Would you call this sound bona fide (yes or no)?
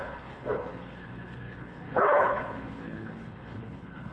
no